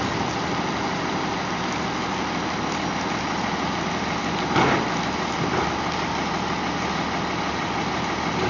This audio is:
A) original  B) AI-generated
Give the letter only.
A